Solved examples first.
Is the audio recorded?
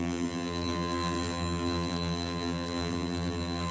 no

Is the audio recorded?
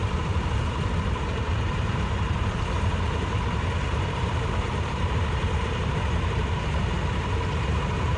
no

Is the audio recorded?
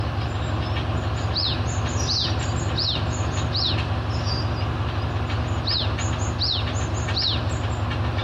yes